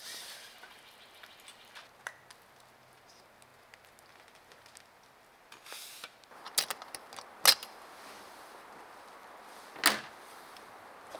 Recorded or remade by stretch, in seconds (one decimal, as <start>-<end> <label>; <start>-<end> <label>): 0.0-11.2 recorded